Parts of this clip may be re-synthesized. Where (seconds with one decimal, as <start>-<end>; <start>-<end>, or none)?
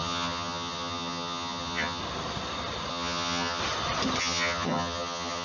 0.0-2.0; 2.9-3.6; 4.2-5.4